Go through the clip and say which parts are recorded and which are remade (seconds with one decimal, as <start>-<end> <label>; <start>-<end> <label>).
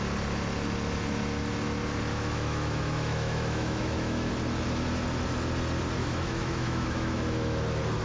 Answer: 0.0-2.1 recorded; 2.1-4.3 remade; 4.3-6.0 recorded; 6.0-7.6 remade; 7.6-8.0 recorded